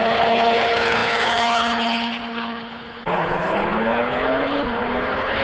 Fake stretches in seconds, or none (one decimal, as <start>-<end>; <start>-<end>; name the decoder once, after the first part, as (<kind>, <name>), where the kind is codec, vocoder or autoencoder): 0.0-5.4 (codec, HILCodec)